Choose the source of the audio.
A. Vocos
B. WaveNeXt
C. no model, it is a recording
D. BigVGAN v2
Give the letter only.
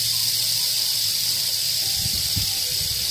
C